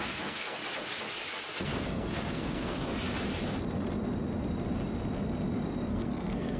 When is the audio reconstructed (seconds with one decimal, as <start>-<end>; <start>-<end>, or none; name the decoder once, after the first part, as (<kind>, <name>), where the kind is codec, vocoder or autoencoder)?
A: 0.0-0.6 (codec, SNAC); 1.6-2.9; 5.9-6.6